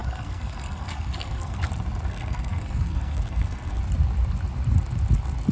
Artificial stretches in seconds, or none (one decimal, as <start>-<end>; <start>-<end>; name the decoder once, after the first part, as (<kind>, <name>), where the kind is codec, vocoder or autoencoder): 0.0-1.7 (codec, SNAC); 2.1-3.8